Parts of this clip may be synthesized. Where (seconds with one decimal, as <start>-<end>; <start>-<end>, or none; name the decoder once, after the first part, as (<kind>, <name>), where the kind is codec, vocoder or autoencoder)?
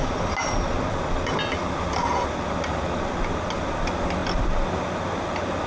none